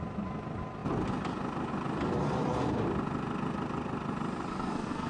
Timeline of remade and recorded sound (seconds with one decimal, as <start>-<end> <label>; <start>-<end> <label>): 0.0-4.5 recorded; 4.5-5.1 remade